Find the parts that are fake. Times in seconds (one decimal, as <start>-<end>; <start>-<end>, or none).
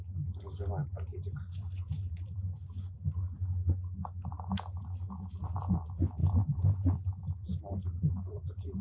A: 1.1-2.4; 6.2-8.8